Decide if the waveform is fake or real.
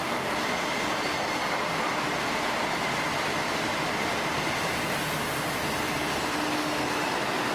real